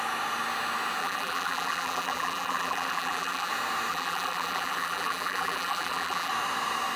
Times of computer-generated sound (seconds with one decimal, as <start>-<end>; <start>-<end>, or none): 1.0-3.5; 3.9-6.3